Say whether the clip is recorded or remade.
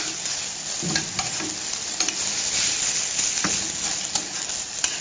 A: recorded